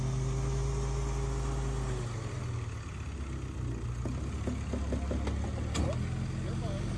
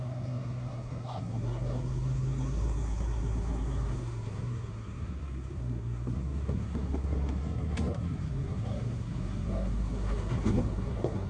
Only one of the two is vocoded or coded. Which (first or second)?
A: second